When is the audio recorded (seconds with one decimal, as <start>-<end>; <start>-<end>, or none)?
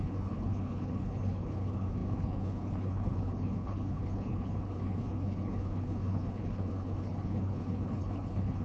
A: none